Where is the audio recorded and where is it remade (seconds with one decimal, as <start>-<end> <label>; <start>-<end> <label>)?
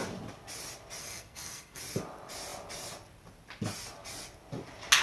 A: 0.0-1.0 recorded; 1.0-1.8 remade; 1.8-5.0 recorded